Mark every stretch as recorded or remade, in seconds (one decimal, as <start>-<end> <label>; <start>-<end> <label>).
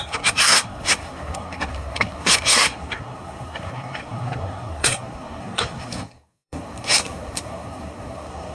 0.0-8.5 remade